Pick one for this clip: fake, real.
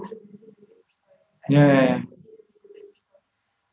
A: real